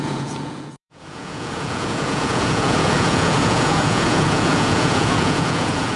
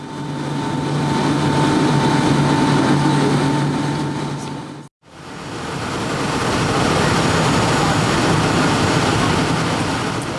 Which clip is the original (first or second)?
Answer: second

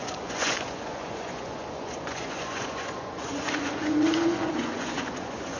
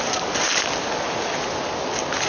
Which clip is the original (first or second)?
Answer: second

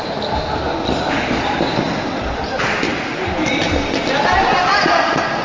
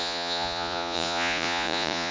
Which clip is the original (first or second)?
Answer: first